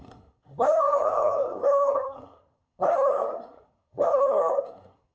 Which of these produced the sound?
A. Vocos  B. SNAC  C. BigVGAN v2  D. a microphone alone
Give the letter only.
B